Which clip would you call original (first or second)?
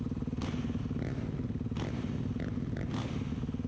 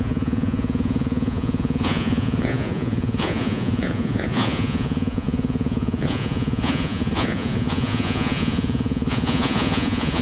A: first